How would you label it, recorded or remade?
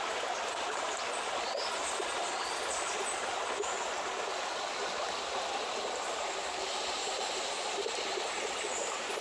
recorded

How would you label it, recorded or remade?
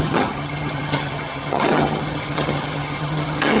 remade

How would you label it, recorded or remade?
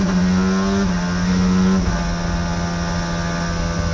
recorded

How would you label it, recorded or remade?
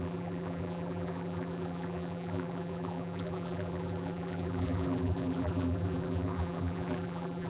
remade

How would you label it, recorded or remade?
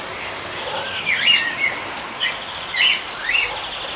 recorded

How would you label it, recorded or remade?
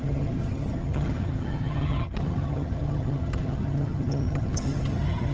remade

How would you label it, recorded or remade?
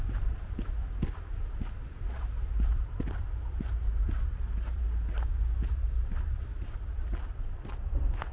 recorded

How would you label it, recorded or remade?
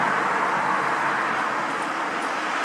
recorded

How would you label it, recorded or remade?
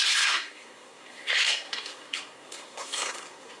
remade